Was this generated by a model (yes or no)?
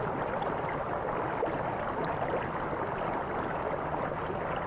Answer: no